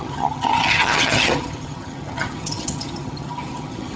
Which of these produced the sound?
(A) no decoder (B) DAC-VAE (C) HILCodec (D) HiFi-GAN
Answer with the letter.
D